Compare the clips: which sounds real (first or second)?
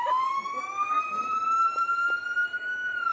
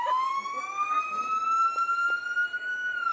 second